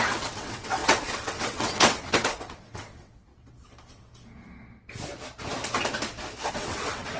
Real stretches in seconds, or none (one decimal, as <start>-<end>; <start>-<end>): 3.3-6.5